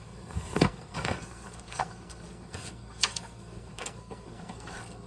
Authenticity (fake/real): fake